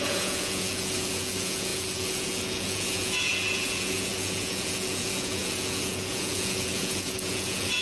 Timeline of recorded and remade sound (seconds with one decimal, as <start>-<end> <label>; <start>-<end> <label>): 0.0-7.8 remade